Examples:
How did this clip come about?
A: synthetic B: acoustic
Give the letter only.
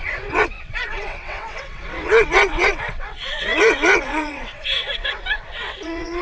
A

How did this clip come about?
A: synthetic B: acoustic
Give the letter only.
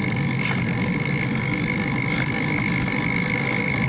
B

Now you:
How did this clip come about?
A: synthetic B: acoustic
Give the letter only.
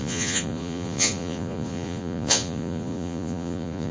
A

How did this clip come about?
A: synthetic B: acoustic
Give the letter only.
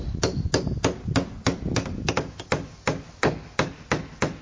B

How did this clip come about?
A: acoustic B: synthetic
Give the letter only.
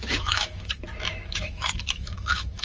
B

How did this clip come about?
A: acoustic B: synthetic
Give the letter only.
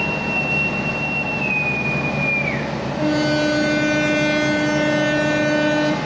A